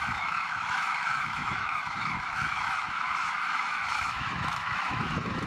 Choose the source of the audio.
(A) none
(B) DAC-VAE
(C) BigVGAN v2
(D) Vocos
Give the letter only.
B